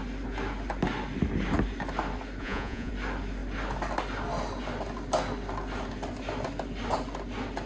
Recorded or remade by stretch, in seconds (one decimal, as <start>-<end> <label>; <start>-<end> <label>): 0.0-2.4 recorded; 2.4-2.9 remade; 2.9-7.7 recorded